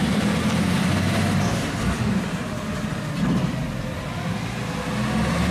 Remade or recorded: recorded